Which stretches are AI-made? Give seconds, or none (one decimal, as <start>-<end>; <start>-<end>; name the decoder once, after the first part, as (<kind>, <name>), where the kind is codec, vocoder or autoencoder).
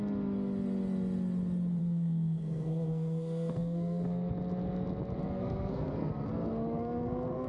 1.8-4.3 (codec, SNAC); 5.2-7.5